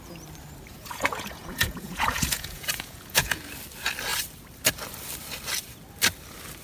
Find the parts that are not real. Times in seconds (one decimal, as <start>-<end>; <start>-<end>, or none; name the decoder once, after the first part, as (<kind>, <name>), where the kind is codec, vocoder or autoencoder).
0.7-3.4 (vocoder, Vocos)